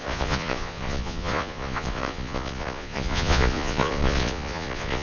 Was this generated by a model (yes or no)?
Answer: yes